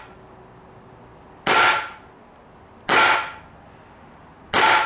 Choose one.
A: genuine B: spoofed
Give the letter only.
A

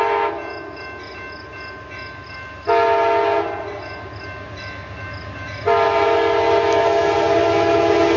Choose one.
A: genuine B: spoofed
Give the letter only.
A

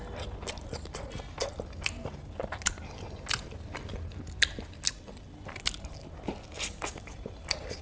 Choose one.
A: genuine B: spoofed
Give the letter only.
A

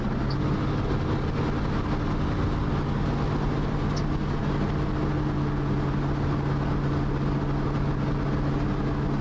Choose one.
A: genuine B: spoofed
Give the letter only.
A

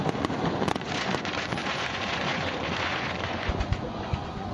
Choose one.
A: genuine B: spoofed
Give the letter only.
B